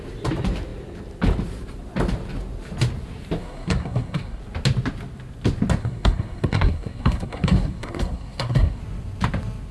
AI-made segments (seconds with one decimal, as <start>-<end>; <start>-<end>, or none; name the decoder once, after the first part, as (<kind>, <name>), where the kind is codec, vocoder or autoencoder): 3.4-4.4 (codec, SNAC); 5.8-8.8